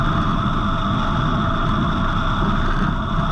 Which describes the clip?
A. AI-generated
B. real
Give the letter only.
B